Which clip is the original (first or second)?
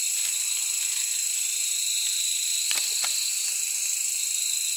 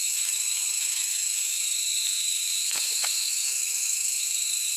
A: first